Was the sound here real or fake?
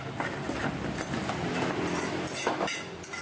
real